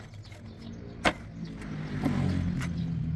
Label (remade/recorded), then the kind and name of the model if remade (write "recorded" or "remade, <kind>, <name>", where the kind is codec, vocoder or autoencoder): recorded